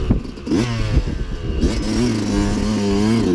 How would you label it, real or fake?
real